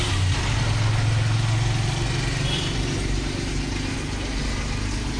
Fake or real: real